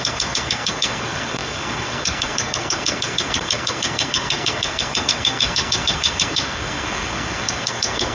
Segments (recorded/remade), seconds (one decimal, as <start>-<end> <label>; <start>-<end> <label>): 0.0-8.1 remade